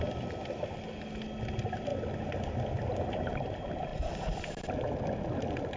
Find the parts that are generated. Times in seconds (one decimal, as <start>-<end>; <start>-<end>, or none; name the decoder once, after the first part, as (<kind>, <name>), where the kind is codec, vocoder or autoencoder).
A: none